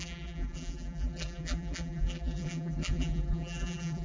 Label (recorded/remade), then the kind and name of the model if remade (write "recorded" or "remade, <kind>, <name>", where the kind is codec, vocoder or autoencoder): remade, vocoder, BigVGAN v2